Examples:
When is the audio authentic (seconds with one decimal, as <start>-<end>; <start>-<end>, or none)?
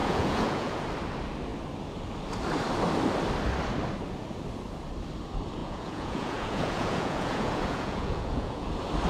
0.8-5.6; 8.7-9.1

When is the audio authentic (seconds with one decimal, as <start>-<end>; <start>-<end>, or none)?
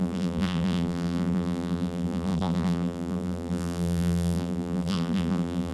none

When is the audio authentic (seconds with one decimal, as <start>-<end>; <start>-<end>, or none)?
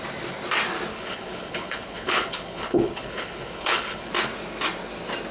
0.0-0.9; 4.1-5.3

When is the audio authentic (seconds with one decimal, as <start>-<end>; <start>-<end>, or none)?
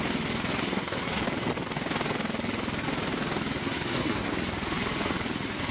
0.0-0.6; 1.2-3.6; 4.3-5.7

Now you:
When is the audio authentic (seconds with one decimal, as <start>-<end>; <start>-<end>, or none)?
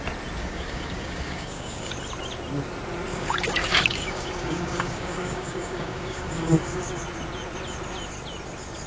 0.0-0.4; 1.9-3.1; 6.9-8.9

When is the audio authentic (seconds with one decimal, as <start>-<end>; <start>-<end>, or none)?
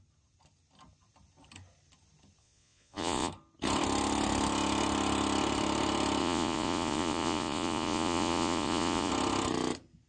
0.0-2.4; 3.3-6.2; 9.1-10.1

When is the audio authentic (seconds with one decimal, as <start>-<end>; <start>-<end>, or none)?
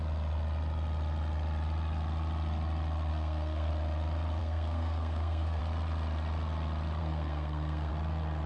0.0-3.1; 3.7-4.4; 5.6-7.0; 7.9-8.5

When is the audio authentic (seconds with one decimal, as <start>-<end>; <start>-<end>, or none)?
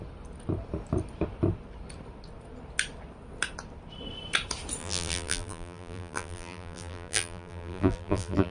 0.0-4.8